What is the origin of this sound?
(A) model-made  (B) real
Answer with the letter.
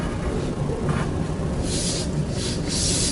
B